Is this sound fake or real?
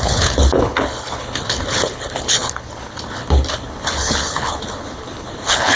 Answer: fake